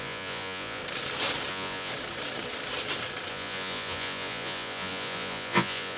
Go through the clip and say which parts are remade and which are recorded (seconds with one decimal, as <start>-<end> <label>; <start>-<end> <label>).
0.0-0.8 remade; 0.8-1.5 recorded; 1.5-1.9 remade; 1.9-3.3 recorded; 3.3-6.0 remade